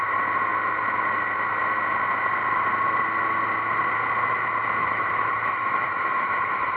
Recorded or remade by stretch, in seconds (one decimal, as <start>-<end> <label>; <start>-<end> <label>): 0.0-4.8 recorded; 4.8-6.8 remade